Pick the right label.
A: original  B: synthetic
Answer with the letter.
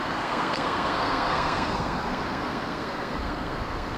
B